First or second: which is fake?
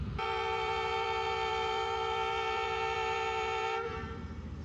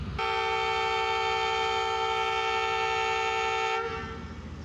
first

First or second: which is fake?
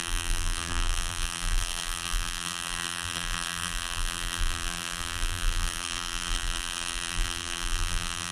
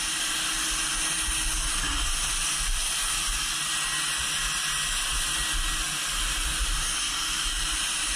first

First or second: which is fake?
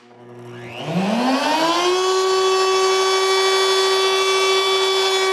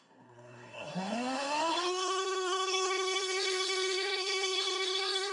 second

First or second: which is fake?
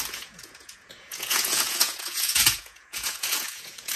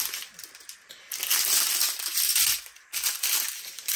first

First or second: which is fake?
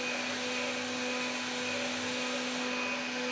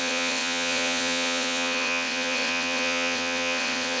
second